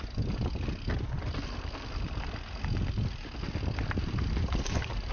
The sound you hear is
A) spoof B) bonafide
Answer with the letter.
B